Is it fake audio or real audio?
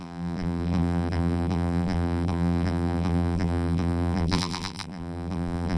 fake